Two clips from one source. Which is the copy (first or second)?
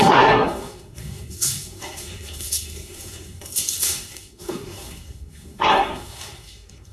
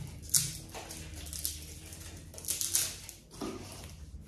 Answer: first